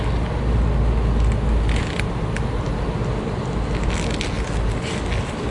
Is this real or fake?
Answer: real